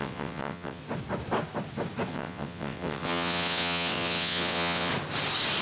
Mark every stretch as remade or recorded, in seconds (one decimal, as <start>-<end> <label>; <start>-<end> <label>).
0.0-0.8 remade; 0.8-2.1 recorded; 2.1-4.9 remade; 4.9-5.6 recorded